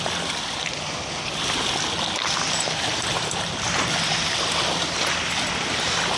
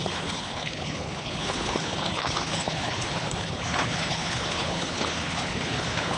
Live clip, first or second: first